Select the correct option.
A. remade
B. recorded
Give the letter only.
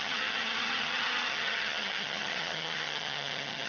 A